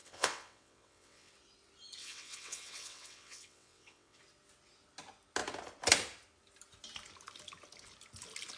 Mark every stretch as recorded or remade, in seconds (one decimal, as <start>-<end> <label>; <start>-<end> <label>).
0.0-1.3 remade; 1.3-2.0 recorded; 2.0-4.2 remade; 4.2-8.6 recorded